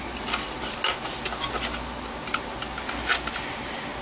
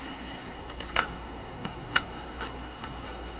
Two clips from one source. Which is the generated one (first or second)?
second